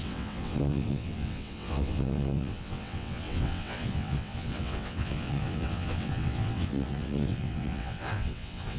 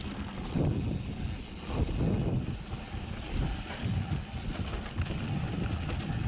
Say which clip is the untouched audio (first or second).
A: second